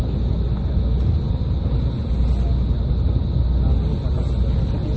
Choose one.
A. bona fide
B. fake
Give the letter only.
A